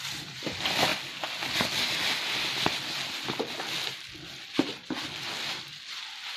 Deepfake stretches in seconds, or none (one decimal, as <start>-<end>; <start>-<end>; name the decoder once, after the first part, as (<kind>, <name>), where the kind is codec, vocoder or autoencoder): none